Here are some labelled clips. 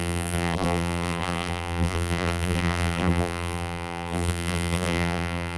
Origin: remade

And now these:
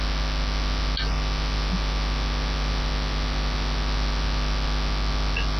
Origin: recorded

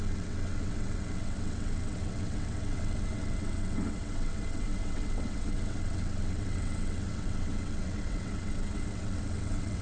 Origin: remade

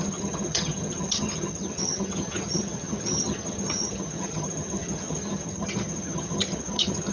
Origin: remade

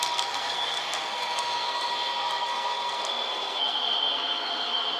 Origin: remade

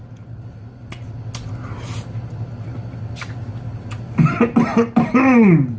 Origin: recorded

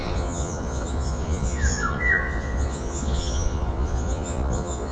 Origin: remade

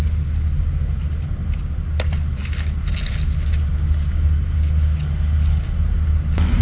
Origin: recorded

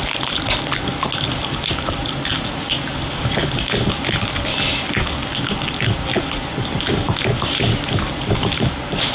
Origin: recorded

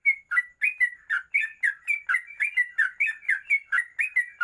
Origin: recorded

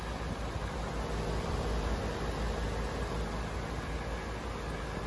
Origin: recorded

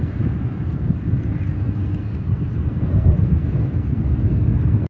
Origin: remade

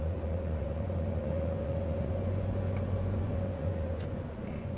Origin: remade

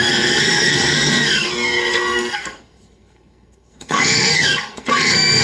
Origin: remade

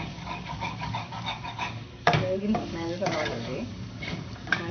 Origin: remade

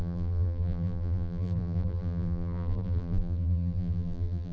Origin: remade